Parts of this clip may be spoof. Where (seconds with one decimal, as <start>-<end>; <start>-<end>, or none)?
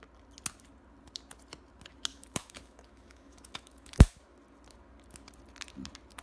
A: 2.1-4.2